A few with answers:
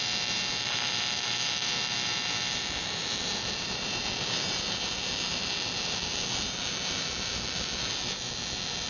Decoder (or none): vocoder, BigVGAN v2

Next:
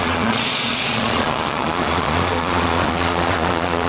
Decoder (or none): vocoder, Vocos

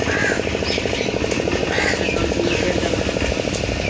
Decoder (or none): none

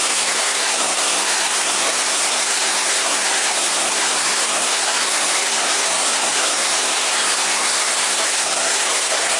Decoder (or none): codec, SNAC